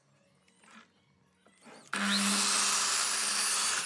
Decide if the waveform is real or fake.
real